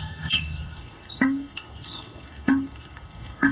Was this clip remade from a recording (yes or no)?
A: yes